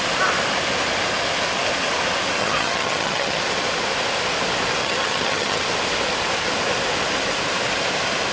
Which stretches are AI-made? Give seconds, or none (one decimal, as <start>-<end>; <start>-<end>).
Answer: 2.4-3.4; 4.8-5.6